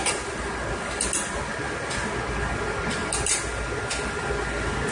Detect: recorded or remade recorded